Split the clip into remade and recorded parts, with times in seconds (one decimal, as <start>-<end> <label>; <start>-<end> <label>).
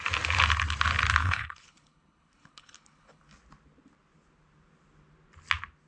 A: 0.0-1.2 recorded; 1.2-3.2 remade; 3.2-5.9 recorded